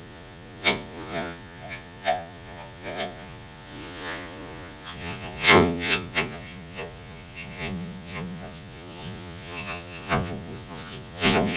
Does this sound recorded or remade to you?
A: remade